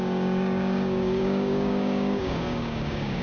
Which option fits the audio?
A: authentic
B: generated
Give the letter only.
B